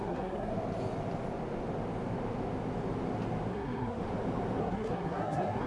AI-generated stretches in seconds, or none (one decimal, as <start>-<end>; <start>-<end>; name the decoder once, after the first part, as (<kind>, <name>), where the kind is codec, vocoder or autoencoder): 0.0-0.5 (codec, SNAC); 3.5-4.0; 4.6-5.7